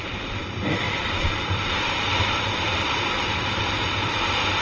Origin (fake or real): fake